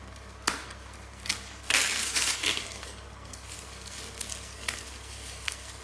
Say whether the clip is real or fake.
fake